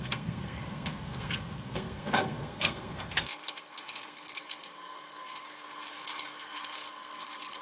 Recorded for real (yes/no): no